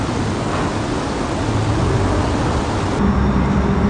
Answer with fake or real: real